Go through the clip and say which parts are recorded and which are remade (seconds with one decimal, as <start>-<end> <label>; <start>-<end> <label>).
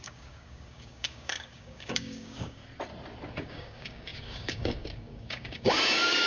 0.0-2.6 remade; 2.6-3.4 recorded; 3.4-6.3 remade